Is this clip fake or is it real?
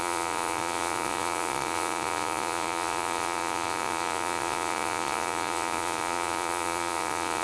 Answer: fake